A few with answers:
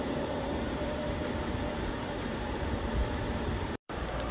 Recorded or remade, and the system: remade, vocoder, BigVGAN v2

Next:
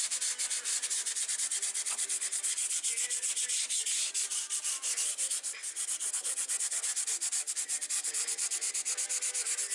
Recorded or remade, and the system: recorded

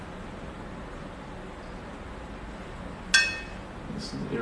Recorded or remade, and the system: recorded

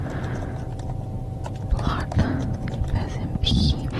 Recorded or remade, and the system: recorded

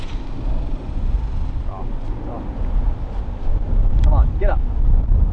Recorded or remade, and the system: recorded